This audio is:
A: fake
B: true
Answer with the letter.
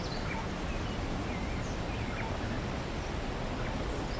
B